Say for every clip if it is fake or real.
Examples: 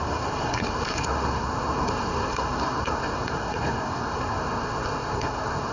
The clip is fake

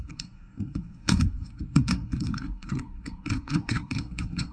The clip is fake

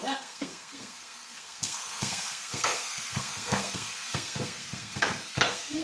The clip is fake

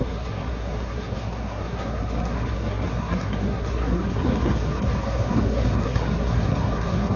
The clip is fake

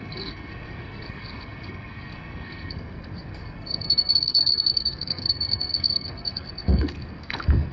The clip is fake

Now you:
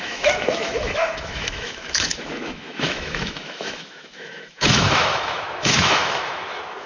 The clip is fake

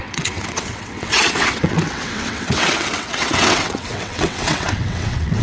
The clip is fake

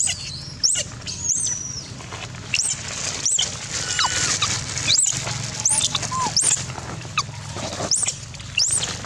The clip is real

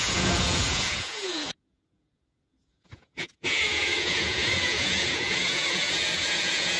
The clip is fake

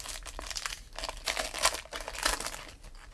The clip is real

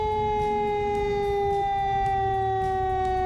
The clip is real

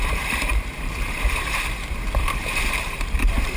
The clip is fake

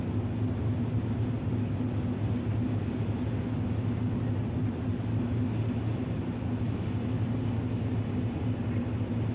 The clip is real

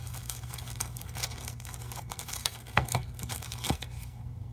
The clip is fake